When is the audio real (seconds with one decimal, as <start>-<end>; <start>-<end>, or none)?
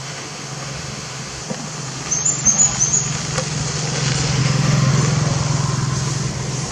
1.4-4.4; 4.9-6.7